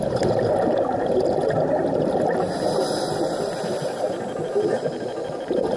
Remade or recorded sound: recorded